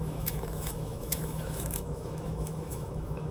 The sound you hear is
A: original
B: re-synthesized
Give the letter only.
B